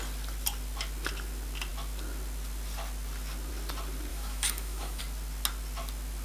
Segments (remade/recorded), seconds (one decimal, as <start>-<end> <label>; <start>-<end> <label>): 0.0-4.1 recorded; 4.1-5.0 remade; 5.0-6.2 recorded